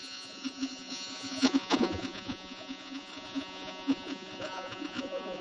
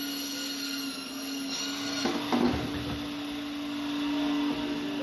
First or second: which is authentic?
second